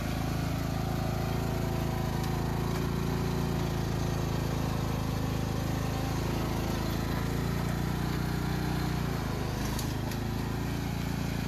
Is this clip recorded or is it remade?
recorded